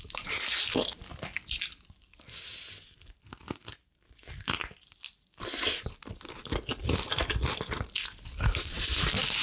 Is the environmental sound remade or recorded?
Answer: recorded